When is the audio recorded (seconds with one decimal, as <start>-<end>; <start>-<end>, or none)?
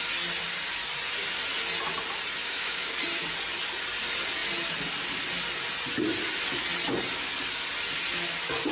0.0-2.4; 3.0-8.7